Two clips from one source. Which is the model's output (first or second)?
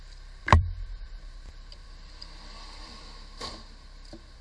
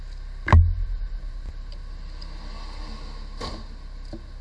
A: first